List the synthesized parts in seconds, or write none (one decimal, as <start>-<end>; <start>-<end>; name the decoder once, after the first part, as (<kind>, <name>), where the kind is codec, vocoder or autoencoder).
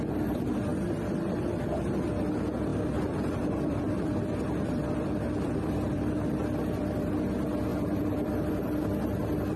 0.7-1.6 (vocoder, BigVGAN v2); 2.7-7.1; 7.7-8.5